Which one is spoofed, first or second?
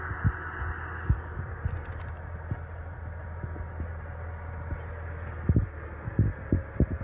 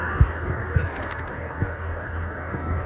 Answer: second